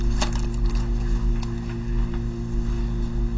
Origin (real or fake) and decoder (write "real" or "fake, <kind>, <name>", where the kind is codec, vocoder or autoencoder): real